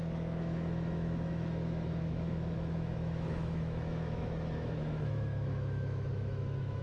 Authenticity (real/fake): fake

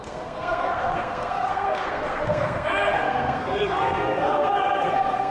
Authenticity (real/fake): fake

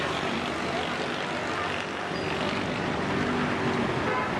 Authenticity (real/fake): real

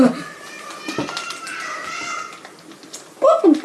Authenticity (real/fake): real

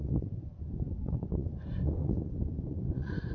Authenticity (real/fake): fake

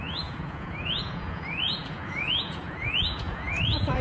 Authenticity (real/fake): fake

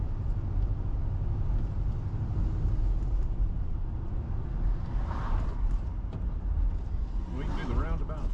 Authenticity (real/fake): real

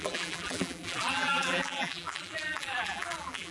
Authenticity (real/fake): fake